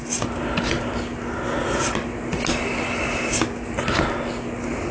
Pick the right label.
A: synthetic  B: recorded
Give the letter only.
B